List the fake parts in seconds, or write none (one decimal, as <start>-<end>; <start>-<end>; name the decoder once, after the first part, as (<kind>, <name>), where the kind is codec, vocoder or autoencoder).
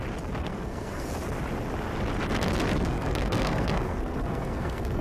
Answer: 0.4-1.1 (codec, SNAC); 2.7-5.0